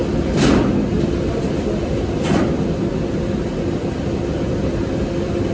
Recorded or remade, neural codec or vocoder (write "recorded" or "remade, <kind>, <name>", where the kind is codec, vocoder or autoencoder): recorded